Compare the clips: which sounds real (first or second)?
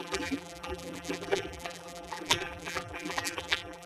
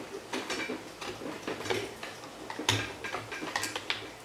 second